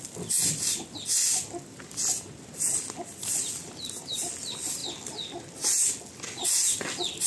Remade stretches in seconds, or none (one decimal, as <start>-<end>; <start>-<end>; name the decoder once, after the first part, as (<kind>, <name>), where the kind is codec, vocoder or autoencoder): 3.6-4.3 (vocoder, BigVGAN v2)